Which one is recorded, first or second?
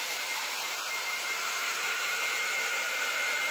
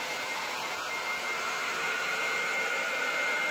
second